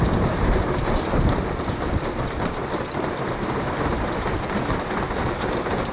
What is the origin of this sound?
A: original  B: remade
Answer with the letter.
B